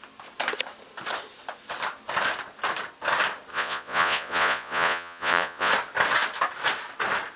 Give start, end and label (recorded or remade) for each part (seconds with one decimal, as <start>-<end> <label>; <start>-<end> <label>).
0.0-3.5 recorded; 3.5-5.7 remade; 5.7-7.4 recorded